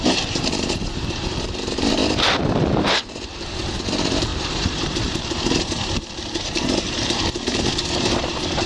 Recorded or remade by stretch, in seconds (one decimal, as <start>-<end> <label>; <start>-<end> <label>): 0.0-2.0 remade; 2.0-2.7 recorded; 2.7-8.7 remade